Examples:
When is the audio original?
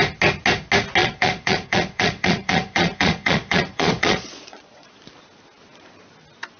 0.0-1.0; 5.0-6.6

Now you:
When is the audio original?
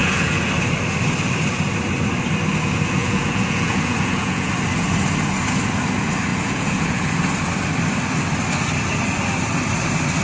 0.5-3.0; 4.5-6.3; 7.1-10.2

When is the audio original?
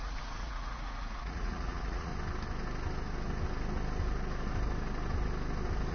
2.1-5.9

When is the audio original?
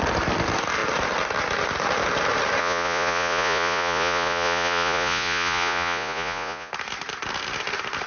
0.0-2.6; 6.7-8.1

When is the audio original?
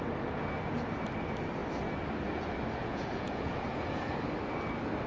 0.0-2.8; 4.3-5.1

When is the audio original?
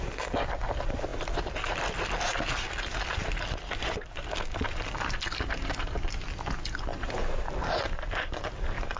0.0-9.0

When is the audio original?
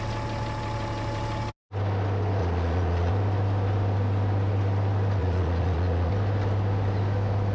0.0-2.4; 3.1-5.2; 6.1-7.5